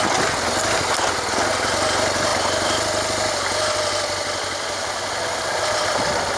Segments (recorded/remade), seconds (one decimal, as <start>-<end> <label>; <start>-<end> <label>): 0.0-6.4 recorded